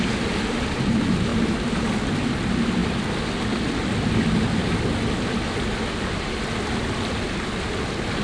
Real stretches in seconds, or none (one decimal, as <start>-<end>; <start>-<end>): 0.0-8.2